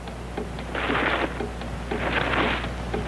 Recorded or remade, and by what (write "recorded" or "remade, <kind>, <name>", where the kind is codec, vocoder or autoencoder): recorded